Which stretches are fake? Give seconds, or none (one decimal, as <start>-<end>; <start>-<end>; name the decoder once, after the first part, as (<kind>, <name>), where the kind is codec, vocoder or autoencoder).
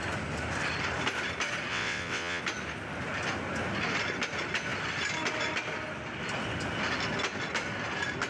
1.7-2.4 (vocoder, WaveNeXt)